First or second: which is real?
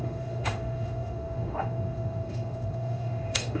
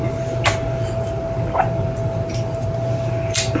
second